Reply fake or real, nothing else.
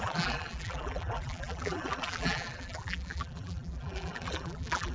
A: fake